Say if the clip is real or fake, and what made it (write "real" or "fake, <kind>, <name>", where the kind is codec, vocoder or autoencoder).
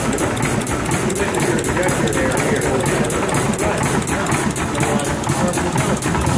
real